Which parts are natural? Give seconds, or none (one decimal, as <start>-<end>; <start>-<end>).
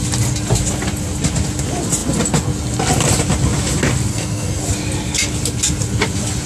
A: 0.0-4.1; 4.6-6.5